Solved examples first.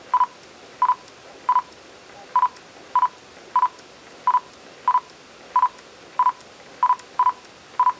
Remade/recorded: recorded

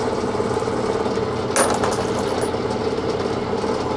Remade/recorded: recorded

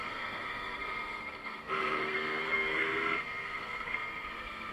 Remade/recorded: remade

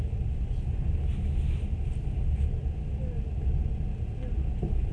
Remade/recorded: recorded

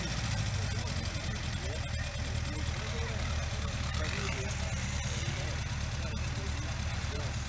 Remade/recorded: recorded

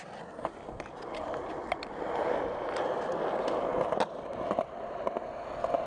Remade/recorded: recorded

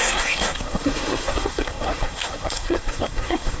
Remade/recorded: remade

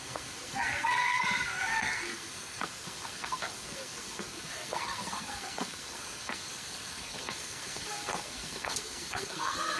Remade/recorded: remade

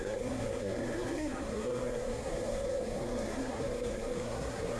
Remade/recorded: remade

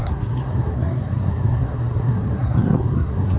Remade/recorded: remade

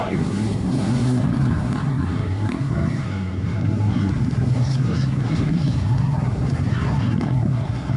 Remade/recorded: remade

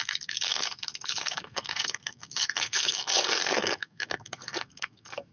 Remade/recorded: remade